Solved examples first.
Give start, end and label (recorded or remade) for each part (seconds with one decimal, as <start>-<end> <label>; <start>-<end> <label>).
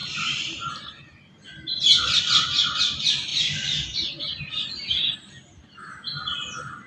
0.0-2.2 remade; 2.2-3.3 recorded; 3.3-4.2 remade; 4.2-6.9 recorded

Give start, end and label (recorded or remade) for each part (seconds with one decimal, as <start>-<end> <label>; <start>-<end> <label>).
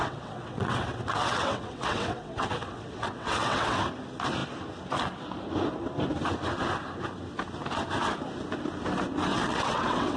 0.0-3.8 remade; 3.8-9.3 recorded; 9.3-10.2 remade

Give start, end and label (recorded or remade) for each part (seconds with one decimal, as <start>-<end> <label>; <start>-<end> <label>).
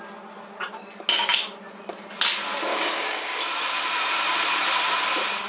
0.0-2.7 recorded; 2.7-3.4 remade; 3.4-5.5 recorded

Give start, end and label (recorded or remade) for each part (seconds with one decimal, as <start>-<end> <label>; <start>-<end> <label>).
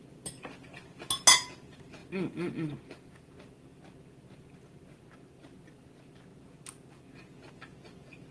0.0-8.3 recorded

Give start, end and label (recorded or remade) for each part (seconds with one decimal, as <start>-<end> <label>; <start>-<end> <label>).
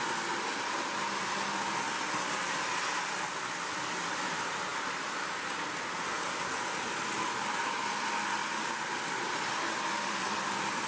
0.0-8.4 recorded; 8.4-10.9 remade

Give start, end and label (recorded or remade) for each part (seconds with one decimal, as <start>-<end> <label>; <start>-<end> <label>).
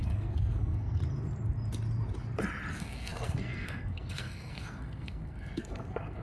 0.0-1.0 remade; 1.0-2.7 recorded; 2.7-6.2 remade